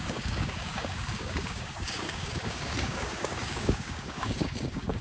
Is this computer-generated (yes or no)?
yes